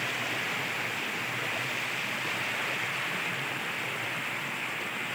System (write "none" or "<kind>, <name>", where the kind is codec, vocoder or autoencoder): none